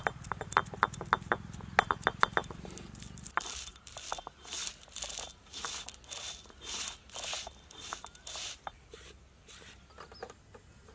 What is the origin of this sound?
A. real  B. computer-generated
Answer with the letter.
A